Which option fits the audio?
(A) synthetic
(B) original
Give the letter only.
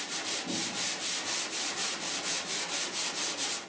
B